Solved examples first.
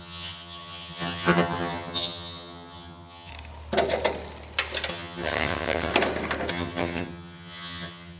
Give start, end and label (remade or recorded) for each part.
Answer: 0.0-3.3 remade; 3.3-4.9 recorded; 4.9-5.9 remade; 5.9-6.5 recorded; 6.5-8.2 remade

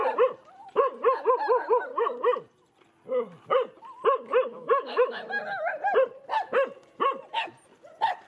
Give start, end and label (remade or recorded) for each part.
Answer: 0.0-4.5 recorded; 4.5-5.2 remade; 5.2-8.3 recorded

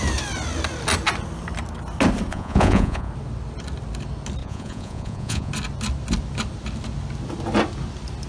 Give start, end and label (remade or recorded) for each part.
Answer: 0.0-2.3 recorded; 2.3-3.1 remade; 3.1-4.4 recorded; 4.4-5.5 remade; 5.5-8.3 recorded

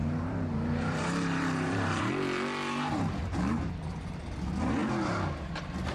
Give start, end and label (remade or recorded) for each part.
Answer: 0.0-2.1 remade; 2.1-5.9 recorded

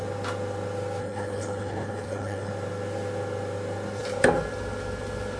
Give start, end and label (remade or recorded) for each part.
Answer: 0.0-1.0 recorded; 1.0-2.5 remade; 2.5-5.4 recorded

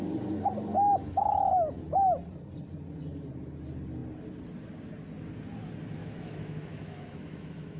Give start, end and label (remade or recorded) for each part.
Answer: 0.0-0.9 recorded; 0.9-1.5 remade; 1.5-6.0 recorded; 6.0-7.8 remade

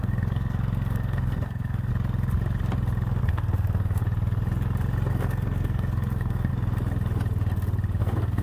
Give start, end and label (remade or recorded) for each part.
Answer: 0.0-1.9 remade; 1.9-3.2 recorded; 3.2-4.0 remade; 4.0-5.1 recorded; 5.1-6.5 remade; 6.5-8.0 recorded; 8.0-8.4 remade